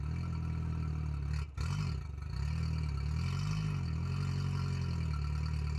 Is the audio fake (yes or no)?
no